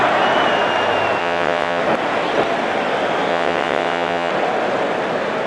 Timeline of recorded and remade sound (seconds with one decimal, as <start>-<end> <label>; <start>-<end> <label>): 0.0-1.2 recorded; 1.2-1.8 remade; 1.8-3.3 recorded; 3.3-4.3 remade; 4.3-5.5 recorded